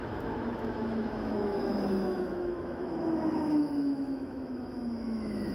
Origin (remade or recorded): remade